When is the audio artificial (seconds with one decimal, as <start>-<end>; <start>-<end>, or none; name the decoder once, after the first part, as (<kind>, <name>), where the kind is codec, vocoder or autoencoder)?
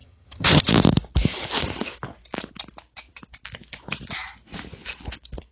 0.0-0.7 (vocoder, HiFi-GAN)